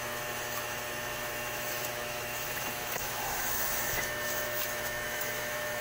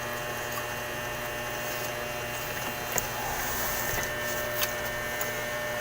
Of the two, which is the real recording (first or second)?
second